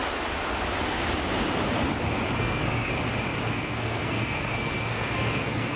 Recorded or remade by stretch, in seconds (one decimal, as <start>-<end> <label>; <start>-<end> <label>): 0.0-2.4 recorded; 2.4-2.9 remade; 2.9-3.5 recorded; 3.5-5.8 remade